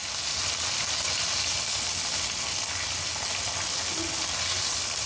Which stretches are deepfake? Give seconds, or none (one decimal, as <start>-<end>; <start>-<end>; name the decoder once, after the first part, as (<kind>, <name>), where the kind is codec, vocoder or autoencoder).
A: none